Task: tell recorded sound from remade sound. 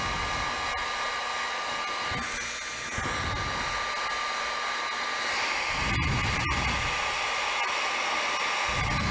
recorded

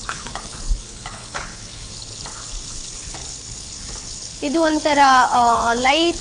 remade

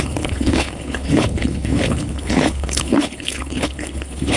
remade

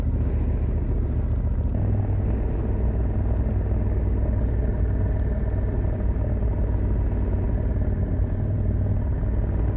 recorded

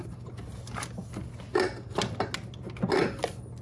recorded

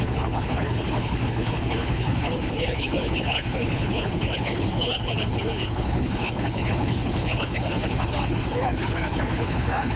remade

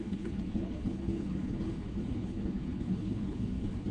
remade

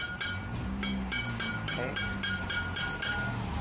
recorded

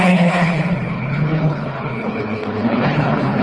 remade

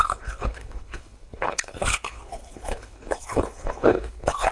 remade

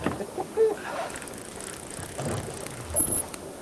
recorded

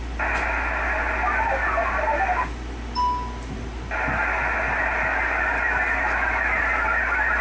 recorded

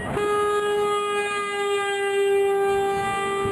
recorded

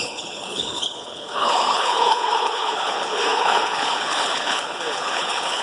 remade